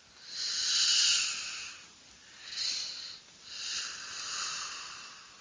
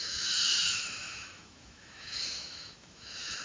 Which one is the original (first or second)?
first